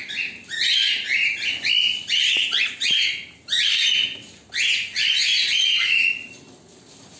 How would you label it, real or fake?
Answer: real